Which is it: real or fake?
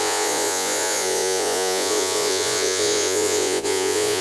fake